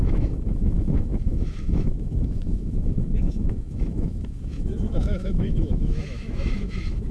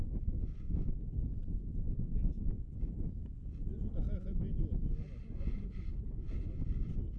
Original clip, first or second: second